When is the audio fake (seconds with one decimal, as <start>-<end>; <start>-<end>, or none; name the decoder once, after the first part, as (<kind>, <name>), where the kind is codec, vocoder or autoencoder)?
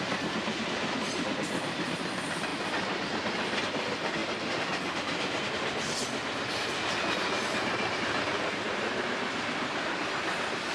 none